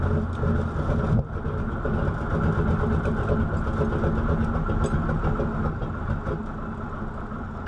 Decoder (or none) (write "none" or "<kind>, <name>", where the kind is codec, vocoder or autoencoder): none